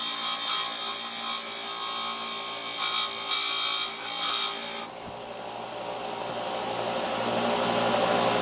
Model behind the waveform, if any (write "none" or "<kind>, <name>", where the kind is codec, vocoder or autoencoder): none